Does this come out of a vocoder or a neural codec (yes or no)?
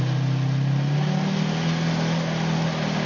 no